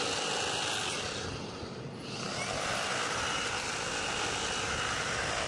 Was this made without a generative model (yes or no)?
yes